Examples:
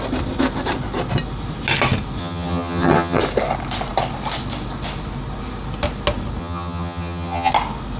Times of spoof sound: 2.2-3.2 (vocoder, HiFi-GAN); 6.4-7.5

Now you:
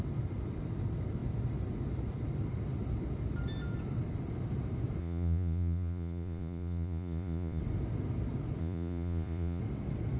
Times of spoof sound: 5.0-7.6 (vocoder, Vocos); 8.6-9.6

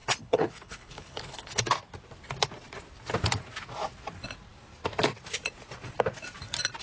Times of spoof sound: 0.0-1.6 (codec, HILCodec)

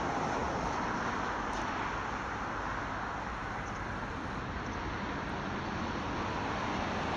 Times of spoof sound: none

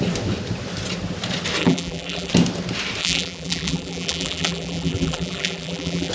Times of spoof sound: 1.6-2.3 (vocoder, BigVGAN v2); 3.0-6.1

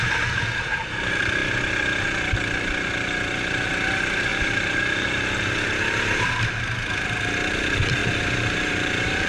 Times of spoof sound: 4.3-6.4 (vocoder, BigVGAN v2); 8.0-9.3

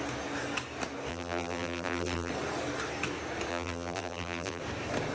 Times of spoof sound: 1.1-2.3 (vocoder, BigVGAN v2); 3.5-4.6